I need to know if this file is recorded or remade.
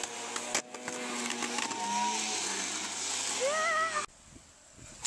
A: recorded